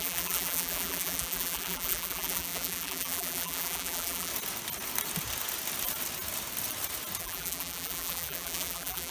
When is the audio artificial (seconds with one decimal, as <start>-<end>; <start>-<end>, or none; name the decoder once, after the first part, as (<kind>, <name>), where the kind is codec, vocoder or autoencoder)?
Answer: 0.0-4.3 (vocoder, BigVGAN v2); 7.2-9.1